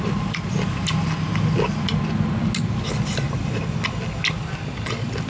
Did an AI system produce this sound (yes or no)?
no